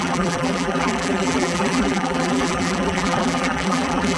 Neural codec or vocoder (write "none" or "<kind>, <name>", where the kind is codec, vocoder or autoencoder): vocoder, BigVGAN v2